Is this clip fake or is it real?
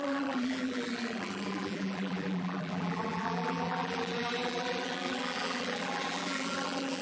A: fake